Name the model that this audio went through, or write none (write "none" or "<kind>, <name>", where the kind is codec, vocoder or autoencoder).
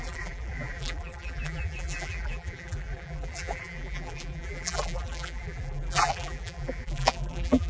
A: vocoder, BigVGAN v2